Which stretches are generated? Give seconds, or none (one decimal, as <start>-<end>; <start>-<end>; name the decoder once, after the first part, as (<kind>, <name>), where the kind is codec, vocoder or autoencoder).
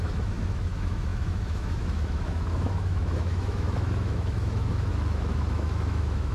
0.0-6.3 (autoencoder, DAC-VAE)